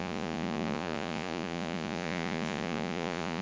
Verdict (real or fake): fake